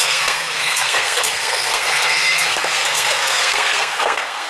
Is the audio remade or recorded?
remade